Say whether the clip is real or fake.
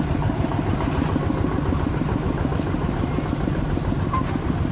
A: real